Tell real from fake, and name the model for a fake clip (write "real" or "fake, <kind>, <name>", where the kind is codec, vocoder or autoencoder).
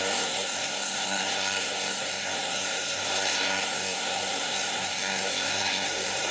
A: fake, codec, SNAC